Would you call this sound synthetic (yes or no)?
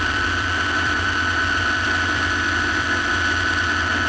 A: yes